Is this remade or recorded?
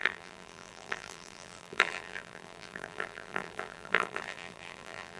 remade